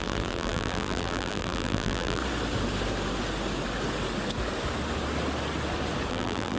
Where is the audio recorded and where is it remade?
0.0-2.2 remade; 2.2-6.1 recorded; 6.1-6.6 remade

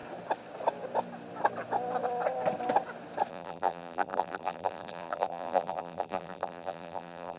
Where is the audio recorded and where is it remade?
0.0-3.3 recorded; 3.3-7.4 remade

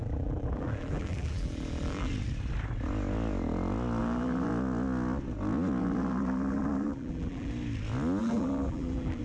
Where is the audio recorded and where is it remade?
0.0-2.1 remade; 2.1-4.0 recorded; 4.0-4.5 remade; 4.5-5.8 recorded; 5.8-7.5 remade; 7.5-8.2 recorded; 8.2-9.2 remade

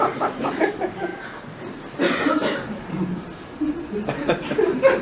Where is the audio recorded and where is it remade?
0.0-3.1 remade; 3.1-4.1 recorded; 4.1-5.0 remade

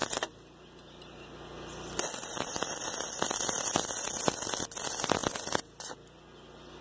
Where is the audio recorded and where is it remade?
0.0-6.8 recorded